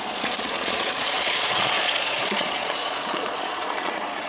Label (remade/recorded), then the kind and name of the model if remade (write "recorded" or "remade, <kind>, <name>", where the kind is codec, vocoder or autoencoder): remade, vocoder, Vocos